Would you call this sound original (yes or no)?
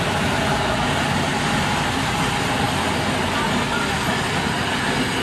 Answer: yes